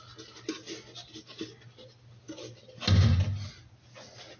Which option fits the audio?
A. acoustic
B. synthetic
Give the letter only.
A